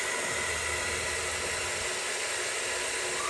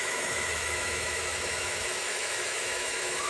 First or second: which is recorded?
first